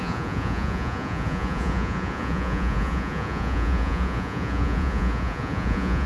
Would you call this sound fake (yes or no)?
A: yes